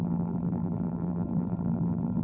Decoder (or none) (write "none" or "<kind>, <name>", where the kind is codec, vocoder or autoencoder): vocoder, BigVGAN v2